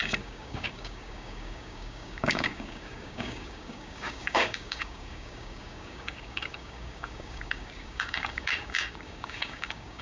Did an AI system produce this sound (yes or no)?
yes